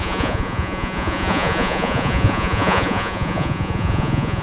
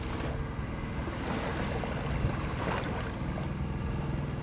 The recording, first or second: second